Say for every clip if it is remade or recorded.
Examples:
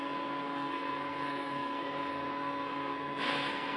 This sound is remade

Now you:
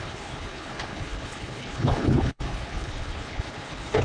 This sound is remade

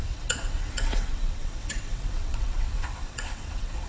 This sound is remade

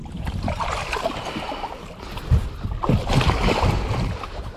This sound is recorded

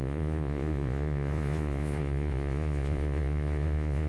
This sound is remade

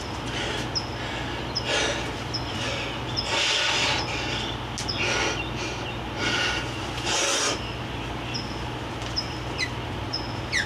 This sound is recorded